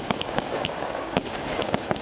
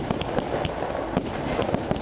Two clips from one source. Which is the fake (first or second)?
first